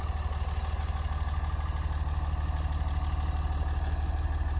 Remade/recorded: recorded